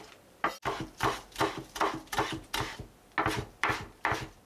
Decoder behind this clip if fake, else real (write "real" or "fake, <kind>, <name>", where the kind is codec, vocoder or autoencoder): real